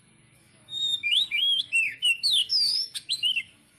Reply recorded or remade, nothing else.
remade